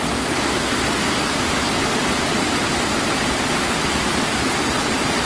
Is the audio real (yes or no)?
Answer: yes